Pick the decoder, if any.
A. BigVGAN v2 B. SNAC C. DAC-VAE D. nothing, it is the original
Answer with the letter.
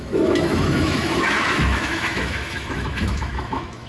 C